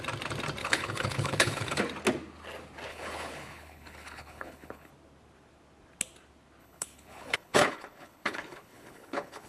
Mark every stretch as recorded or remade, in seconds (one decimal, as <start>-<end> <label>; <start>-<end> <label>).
0.0-0.6 recorded; 0.6-1.8 remade; 1.8-2.9 recorded; 2.9-4.9 remade; 4.9-6.6 recorded; 6.6-9.5 remade

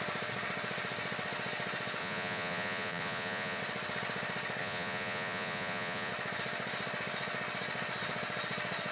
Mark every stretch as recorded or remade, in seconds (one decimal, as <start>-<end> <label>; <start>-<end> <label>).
0.0-2.0 recorded; 2.0-3.6 remade; 3.6-4.6 recorded; 4.6-6.1 remade; 6.1-8.9 recorded